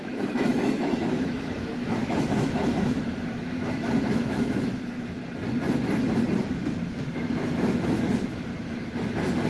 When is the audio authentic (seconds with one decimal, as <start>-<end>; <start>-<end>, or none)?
5.2-7.0; 8.5-9.5